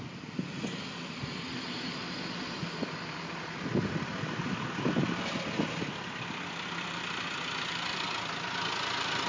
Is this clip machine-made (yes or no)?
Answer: no